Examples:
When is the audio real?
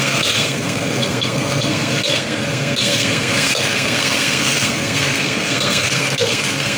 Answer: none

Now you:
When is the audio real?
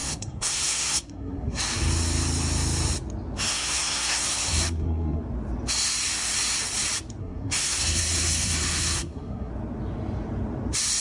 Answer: 1.6-3.5; 5.2-7.2; 9.5-11.0